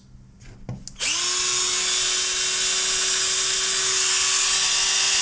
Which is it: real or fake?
real